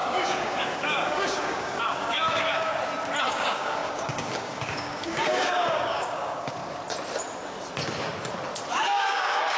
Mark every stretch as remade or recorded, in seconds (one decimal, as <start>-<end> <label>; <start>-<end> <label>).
0.0-2.7 remade; 2.7-3.3 recorded; 3.3-6.6 remade; 6.6-8.7 recorded; 8.7-9.6 remade